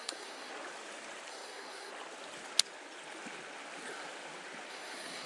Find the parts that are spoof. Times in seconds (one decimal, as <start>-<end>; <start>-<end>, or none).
0.0-0.5; 1.3-1.9; 4.7-5.3